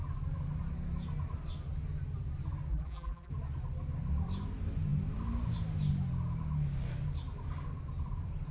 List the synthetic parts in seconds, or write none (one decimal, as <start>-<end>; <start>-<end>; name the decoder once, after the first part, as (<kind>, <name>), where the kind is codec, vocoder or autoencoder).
2.7-3.3 (vocoder, BigVGAN v2)